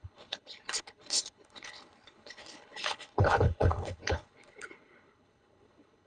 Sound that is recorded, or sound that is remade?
remade